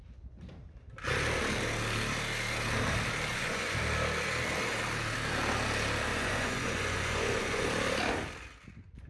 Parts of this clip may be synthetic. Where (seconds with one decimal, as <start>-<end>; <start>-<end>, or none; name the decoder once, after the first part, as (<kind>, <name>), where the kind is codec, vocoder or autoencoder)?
3.3-3.8 (vocoder, Vocos); 6.1-7.7